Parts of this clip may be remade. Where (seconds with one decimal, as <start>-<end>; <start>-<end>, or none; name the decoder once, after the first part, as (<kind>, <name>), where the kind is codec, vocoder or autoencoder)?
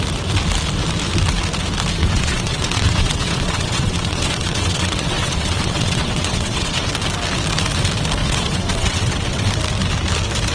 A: 2.0-6.9 (vocoder, WaveNeXt); 8.2-9.5